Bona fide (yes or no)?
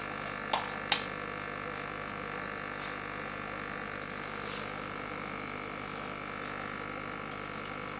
yes